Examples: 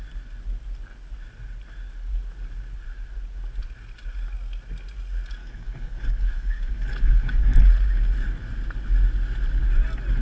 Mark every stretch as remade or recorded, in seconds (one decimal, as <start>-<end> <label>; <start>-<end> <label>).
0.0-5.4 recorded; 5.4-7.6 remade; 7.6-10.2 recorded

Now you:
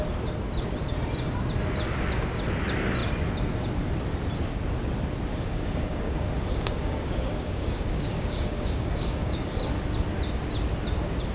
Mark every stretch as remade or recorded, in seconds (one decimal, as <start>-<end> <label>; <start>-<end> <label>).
0.0-5.3 recorded; 5.3-9.6 remade; 9.6-11.3 recorded

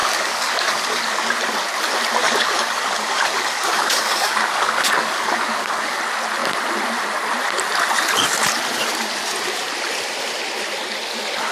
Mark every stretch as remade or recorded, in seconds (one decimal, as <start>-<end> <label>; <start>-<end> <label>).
0.0-1.4 remade; 1.4-2.2 recorded; 2.2-6.0 remade; 6.0-11.5 recorded